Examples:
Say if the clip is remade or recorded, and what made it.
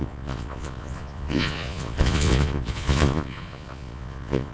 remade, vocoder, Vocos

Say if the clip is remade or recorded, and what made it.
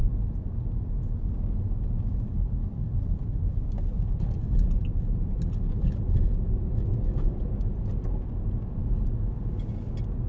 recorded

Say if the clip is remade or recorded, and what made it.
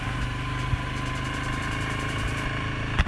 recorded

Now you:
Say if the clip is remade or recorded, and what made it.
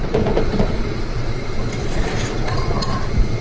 remade, vocoder, Vocos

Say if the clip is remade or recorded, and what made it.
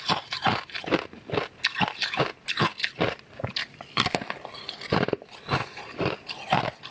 recorded